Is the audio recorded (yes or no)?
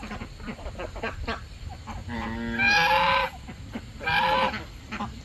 yes